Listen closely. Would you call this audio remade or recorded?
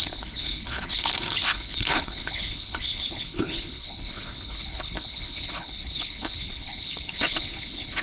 remade